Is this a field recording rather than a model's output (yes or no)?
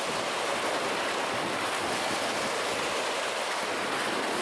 yes